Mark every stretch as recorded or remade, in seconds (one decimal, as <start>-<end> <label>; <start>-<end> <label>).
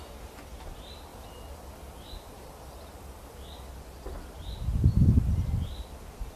0.0-1.1 recorded; 1.1-3.7 remade; 3.7-6.4 recorded